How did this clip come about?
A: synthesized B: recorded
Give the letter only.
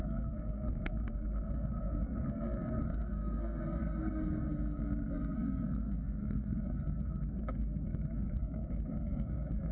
A